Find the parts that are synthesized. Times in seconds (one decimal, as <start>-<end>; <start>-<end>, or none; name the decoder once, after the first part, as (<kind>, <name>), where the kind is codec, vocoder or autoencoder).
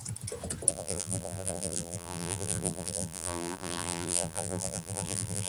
0.7-5.5 (vocoder, BigVGAN v2)